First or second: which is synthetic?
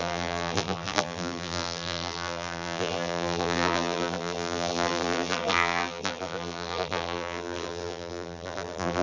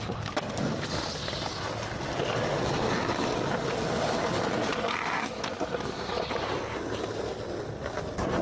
first